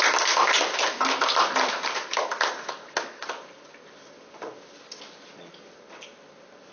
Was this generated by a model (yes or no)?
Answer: no